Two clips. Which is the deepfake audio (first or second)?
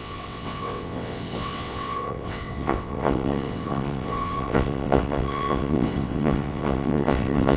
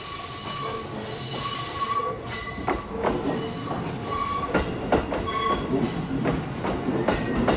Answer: first